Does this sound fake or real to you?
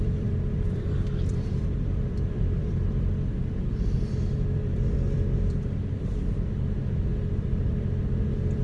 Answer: fake